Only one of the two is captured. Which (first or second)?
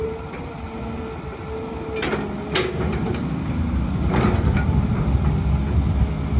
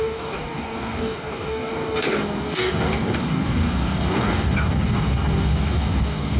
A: first